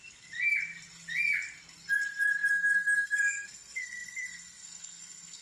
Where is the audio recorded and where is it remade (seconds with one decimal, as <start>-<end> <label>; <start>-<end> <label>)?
0.0-2.5 recorded; 2.5-5.4 remade